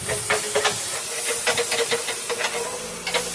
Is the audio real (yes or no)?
yes